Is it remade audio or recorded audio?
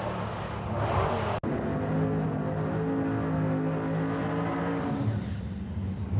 recorded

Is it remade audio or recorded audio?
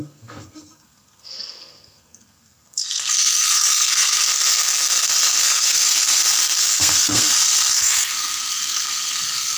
remade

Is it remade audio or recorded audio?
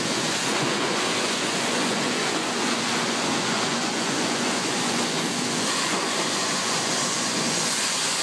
remade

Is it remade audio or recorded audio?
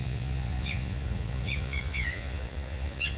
remade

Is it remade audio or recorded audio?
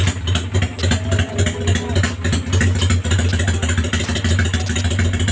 recorded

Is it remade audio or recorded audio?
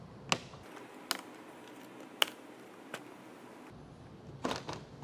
recorded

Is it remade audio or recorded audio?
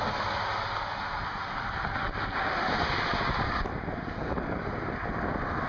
recorded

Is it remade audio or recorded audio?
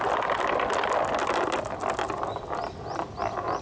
recorded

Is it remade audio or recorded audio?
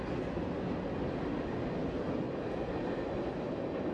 recorded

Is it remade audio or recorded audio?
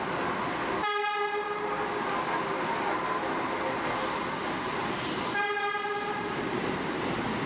recorded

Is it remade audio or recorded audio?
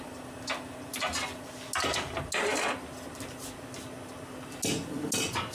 recorded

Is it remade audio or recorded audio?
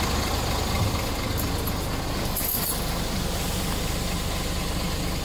recorded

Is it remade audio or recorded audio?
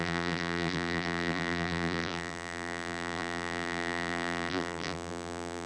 remade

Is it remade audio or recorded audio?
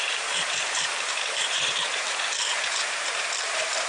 remade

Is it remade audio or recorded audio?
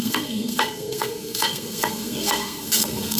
remade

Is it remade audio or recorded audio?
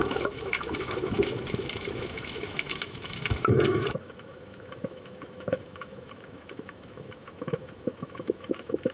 remade